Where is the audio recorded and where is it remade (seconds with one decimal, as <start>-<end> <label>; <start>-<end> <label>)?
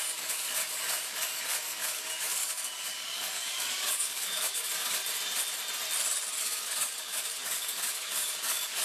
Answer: 0.0-5.0 remade; 5.0-6.4 recorded; 6.4-8.8 remade